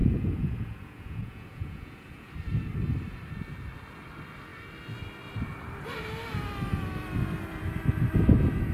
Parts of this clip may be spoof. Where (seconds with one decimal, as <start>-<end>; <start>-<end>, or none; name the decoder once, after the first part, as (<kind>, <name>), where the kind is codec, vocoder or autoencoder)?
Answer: 0.0-2.3 (vocoder, Vocos)